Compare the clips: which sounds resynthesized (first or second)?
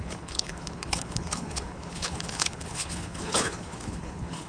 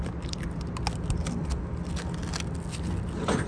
first